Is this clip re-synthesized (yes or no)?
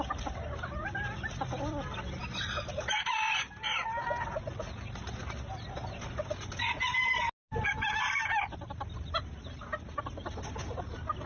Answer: no